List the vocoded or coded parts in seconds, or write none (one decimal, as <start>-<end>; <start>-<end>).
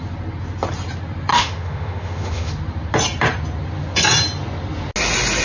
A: 1.3-2.5